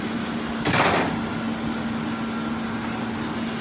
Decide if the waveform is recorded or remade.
recorded